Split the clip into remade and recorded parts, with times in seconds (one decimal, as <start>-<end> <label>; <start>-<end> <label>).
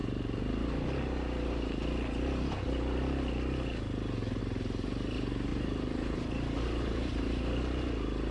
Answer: 0.0-5.5 recorded; 5.5-7.4 remade; 7.4-8.3 recorded